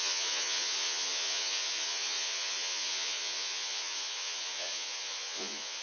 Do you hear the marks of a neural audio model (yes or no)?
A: yes